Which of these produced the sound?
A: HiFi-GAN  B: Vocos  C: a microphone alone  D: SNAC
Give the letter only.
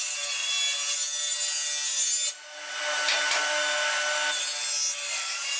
C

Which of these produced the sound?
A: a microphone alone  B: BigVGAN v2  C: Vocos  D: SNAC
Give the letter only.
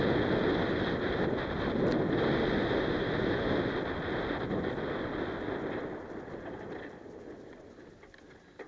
A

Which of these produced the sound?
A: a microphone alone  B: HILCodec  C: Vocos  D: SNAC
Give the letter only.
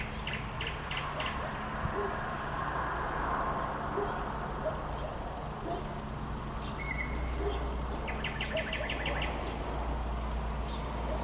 A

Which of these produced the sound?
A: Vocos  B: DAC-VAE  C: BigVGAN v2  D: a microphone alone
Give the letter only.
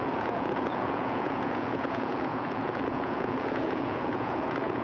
A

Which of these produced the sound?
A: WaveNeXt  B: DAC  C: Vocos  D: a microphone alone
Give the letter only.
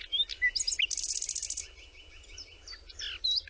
D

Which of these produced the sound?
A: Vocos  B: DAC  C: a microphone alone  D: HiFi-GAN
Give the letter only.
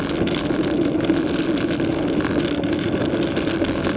C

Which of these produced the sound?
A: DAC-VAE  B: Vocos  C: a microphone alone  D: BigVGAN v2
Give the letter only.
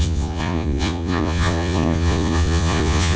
B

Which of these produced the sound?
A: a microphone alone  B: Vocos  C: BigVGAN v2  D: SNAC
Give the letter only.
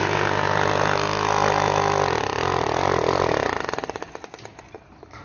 A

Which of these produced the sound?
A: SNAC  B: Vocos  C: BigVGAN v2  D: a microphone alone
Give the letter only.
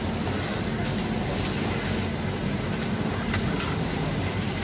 D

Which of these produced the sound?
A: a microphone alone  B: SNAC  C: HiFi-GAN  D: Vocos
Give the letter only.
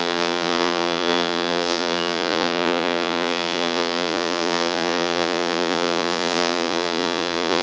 D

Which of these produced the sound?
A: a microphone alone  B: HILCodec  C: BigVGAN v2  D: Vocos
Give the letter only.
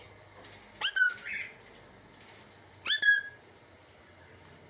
A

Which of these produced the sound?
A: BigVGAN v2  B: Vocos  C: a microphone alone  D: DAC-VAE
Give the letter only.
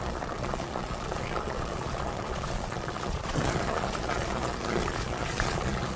B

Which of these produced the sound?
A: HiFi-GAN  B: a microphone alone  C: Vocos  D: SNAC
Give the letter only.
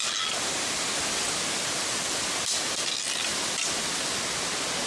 B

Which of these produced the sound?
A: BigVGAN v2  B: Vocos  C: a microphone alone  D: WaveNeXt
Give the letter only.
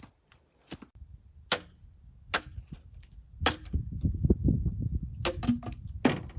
C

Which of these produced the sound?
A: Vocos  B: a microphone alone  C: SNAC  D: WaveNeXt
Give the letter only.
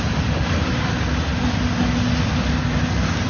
B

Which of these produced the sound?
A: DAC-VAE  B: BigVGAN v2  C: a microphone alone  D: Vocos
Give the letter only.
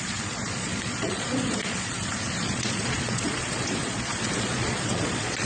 D